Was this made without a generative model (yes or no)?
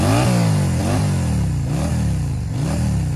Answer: yes